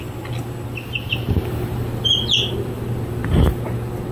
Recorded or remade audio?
recorded